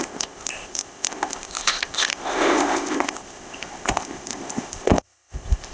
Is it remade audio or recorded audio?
remade